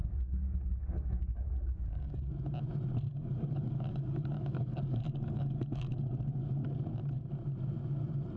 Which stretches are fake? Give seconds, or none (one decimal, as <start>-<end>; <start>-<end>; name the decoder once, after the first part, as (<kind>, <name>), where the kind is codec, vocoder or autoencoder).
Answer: 0.0-2.3 (codec, DAC); 3.1-5.9